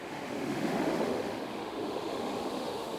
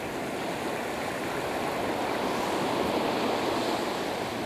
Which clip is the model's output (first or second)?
first